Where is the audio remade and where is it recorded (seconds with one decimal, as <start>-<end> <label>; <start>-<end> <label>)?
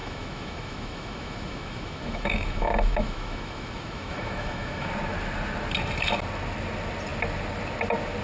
0.0-4.9 remade; 4.9-8.2 recorded